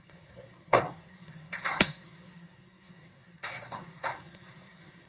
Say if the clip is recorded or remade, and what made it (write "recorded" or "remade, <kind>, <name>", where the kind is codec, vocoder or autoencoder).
remade, codec, SNAC